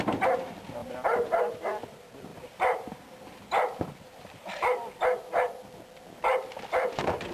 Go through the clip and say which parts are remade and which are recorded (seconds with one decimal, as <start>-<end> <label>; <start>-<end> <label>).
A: 0.0-0.8 recorded; 0.8-1.4 remade; 1.4-2.3 recorded; 2.3-4.6 remade; 4.6-7.3 recorded